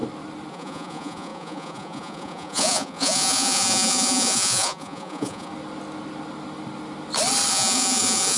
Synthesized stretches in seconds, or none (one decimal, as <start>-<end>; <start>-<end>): 0.5-5.5; 7.5-8.4